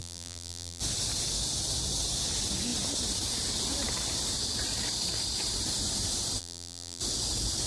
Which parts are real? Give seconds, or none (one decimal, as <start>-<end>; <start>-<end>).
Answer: 0.8-6.4; 7.0-7.7